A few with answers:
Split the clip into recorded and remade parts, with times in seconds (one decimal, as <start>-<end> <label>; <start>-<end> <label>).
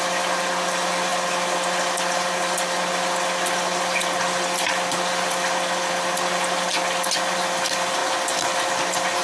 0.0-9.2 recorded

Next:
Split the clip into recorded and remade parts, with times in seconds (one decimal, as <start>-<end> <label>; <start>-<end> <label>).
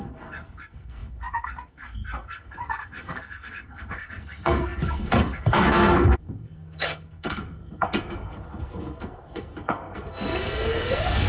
0.0-11.3 remade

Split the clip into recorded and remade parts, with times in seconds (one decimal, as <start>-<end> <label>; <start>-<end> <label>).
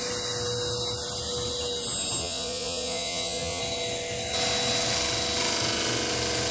0.0-2.2 recorded; 2.2-3.6 remade; 3.6-6.5 recorded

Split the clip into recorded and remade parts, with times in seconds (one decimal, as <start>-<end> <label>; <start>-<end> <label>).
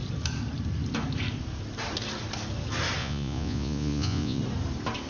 0.0-3.0 recorded; 3.0-4.4 remade; 4.4-5.1 recorded